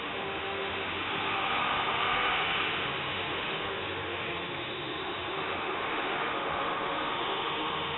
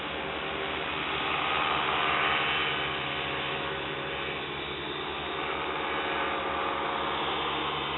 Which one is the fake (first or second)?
first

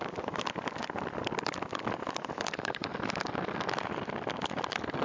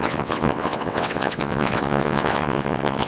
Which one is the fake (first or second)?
second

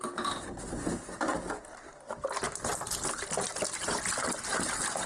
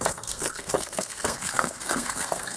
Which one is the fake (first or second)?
second